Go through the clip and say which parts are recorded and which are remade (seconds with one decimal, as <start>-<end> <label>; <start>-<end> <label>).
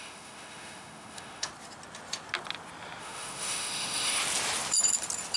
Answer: 0.0-1.5 remade; 1.5-3.0 recorded; 3.0-4.2 remade; 4.2-5.4 recorded